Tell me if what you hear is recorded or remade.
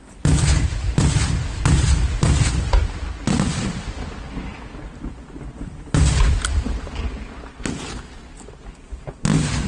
recorded